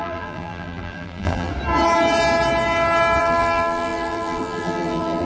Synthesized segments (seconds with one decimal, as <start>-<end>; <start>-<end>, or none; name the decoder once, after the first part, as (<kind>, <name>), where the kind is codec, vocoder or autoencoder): 0.0-1.5 (vocoder, BigVGAN v2); 3.2-5.2